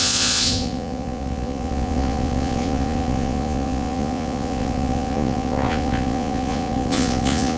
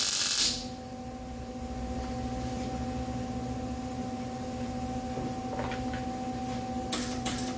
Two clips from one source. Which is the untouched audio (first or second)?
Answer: second